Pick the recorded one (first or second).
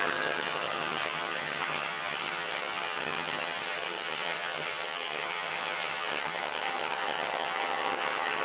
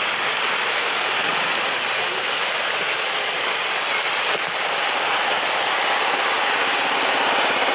second